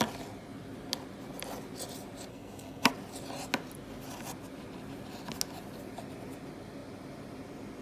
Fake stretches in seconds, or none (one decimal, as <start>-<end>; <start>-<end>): 2.3-2.9